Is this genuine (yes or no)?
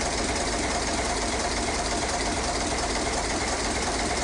no